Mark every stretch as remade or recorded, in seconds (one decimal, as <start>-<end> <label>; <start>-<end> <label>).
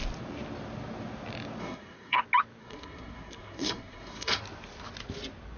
0.0-1.6 recorded; 1.6-2.2 remade; 2.2-2.6 recorded; 2.6-4.4 remade; 4.4-5.6 recorded